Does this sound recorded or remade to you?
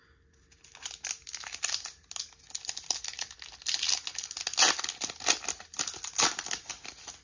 recorded